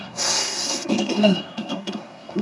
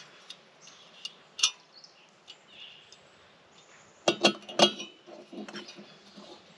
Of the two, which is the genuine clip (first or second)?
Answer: second